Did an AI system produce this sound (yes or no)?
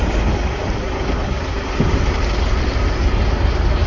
no